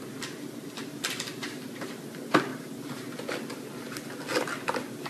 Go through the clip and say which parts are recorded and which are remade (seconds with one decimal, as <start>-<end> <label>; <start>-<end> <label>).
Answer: 0.0-5.1 recorded